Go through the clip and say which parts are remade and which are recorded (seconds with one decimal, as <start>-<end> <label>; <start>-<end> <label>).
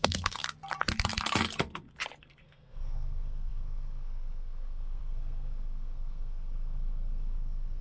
0.0-0.4 remade; 0.4-2.2 recorded; 2.2-7.8 remade